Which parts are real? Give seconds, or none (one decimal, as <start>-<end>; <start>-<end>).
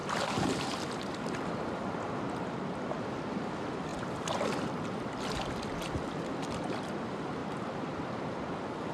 0.0-7.4; 8.0-8.9